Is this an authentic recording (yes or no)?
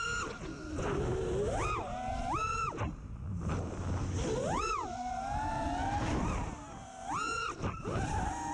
yes